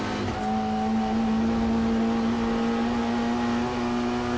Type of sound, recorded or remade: recorded